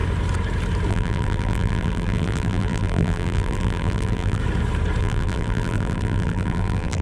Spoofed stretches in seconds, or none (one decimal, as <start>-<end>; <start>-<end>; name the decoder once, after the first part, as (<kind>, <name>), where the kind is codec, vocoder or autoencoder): 0.9-4.4 (vocoder, BigVGAN v2); 5.0-7.0